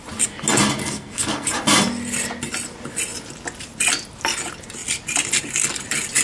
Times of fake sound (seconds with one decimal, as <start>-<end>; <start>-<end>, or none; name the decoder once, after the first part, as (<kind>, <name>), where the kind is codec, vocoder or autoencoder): 0.8-1.5 (codec, SNAC)

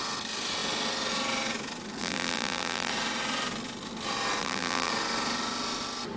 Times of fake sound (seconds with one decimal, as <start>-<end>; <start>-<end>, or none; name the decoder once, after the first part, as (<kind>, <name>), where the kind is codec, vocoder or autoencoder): 2.0-2.9 (vocoder, BigVGAN v2); 4.4-4.9

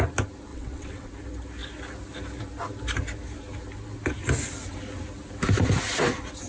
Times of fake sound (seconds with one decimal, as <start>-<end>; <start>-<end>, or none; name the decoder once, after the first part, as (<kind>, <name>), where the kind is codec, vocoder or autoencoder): 0.5-1.1 (vocoder, WaveNeXt)

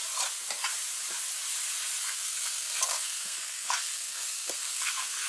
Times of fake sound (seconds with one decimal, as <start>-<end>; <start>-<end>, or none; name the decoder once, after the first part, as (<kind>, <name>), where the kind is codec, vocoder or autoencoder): 2.0-5.3 (codec, SNAC)

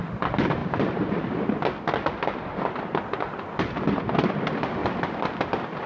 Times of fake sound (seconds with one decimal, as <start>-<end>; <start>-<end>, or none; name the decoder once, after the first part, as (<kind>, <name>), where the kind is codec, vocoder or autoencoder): 4.8-5.9 (vocoder, BigVGAN v2)